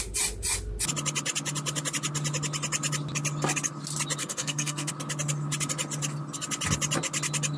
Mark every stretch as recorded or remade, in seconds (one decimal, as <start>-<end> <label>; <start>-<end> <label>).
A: 0.0-4.2 recorded; 4.2-4.9 remade; 4.9-7.6 recorded